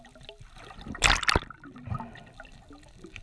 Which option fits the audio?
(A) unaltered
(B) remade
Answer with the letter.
A